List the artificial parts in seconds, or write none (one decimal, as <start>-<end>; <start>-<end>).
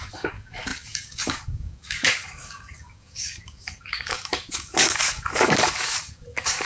0.0-6.7